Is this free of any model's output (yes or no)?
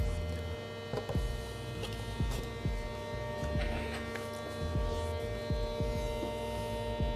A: yes